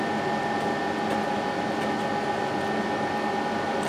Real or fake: real